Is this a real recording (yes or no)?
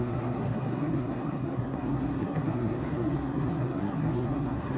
no